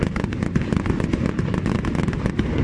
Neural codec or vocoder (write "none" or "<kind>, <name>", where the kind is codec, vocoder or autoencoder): none